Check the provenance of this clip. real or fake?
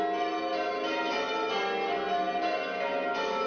real